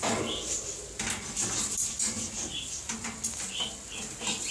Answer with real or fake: real